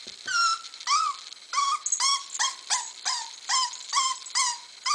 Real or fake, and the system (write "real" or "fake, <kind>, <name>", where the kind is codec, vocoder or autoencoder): real